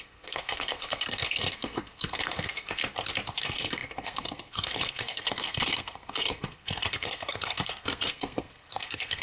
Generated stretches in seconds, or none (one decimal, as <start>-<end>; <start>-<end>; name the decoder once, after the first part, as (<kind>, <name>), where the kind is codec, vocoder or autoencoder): 0.0-2.8 (codec, SNAC); 3.4-9.2